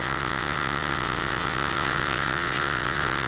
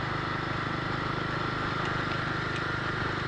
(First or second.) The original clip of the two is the second